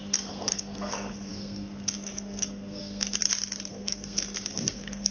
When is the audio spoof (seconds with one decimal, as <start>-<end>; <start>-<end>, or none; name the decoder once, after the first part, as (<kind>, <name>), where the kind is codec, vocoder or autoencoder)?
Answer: 0.0-3.2 (codec, SNAC); 3.7-5.1